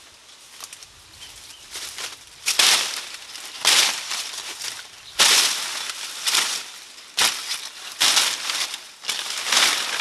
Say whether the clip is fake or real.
real